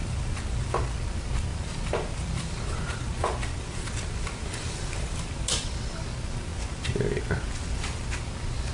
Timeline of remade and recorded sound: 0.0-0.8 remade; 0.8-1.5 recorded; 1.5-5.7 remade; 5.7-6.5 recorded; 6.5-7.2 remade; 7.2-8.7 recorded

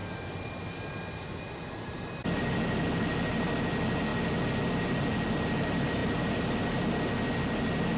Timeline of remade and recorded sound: 0.0-2.1 remade; 2.1-6.0 recorded; 6.0-6.9 remade; 6.9-8.0 recorded

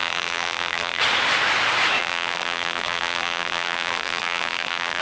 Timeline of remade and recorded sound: 0.0-1.0 remade; 1.0-2.0 recorded; 2.0-5.0 remade